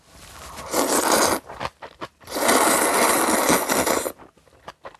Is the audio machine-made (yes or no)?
no